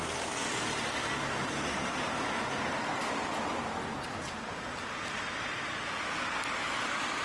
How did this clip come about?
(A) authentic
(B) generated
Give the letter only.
A